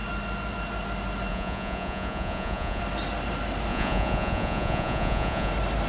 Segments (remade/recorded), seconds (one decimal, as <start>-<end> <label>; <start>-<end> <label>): 0.0-1.3 recorded; 1.3-2.8 remade; 2.8-3.7 recorded; 3.7-5.5 remade; 5.5-5.9 recorded